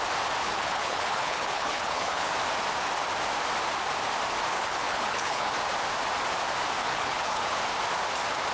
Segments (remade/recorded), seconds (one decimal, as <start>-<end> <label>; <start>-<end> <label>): 0.0-0.4 recorded; 0.4-2.3 remade; 2.3-4.5 recorded; 4.5-5.5 remade; 5.5-6.8 recorded; 6.8-7.6 remade; 7.6-8.5 recorded